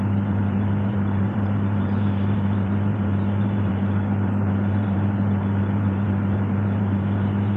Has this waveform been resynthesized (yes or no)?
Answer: yes